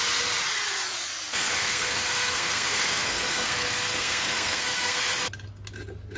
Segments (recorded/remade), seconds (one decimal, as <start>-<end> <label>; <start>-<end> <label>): 0.0-1.3 recorded; 1.3-5.0 remade; 5.0-6.2 recorded

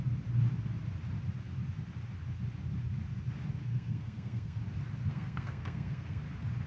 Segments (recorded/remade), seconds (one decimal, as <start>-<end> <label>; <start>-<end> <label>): 0.0-3.6 recorded; 3.6-4.6 remade; 4.6-5.1 recorded; 5.1-6.2 remade; 6.2-6.7 recorded

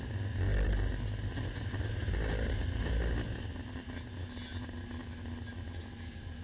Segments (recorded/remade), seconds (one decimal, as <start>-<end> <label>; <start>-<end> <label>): 0.0-6.4 recorded